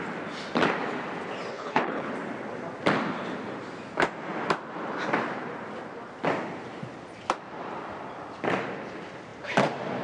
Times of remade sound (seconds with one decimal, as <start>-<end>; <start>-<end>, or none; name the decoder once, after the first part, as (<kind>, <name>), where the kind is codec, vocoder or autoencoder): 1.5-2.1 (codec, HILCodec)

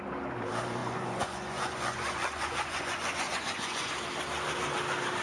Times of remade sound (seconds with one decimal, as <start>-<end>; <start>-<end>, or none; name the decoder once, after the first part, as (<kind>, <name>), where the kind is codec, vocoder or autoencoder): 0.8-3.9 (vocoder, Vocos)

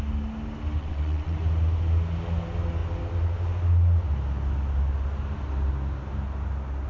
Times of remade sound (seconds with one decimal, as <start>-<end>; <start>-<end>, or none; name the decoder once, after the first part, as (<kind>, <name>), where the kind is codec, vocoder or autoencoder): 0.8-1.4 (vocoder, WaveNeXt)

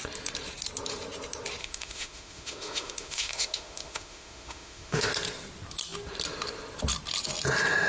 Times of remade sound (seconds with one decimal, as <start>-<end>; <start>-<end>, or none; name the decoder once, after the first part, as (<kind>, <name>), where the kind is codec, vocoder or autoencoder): 1.6-5.1 (autoencoder, DAC-VAE)

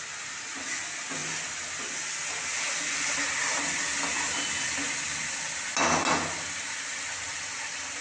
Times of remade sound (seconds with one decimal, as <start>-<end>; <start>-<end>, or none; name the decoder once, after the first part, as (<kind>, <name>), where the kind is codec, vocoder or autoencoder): none

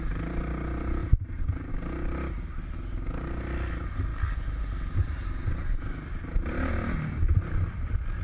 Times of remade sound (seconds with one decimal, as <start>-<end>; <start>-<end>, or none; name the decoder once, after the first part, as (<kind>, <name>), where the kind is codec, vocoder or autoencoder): none